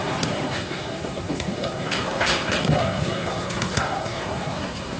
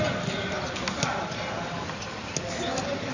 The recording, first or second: second